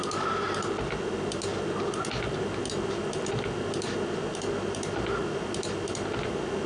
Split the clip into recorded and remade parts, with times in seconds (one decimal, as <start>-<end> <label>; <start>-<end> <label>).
0.0-6.7 recorded